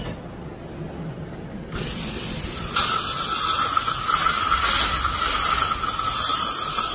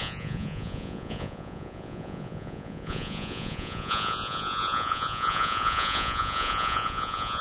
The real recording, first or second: first